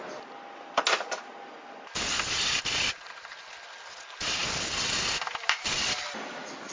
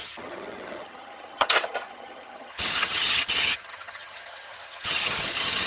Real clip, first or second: first